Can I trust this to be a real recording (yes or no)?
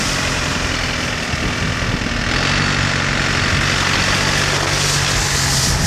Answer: yes